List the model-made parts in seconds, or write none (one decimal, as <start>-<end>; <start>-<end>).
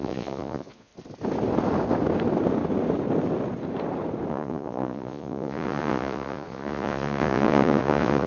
0.0-0.9; 4.3-8.3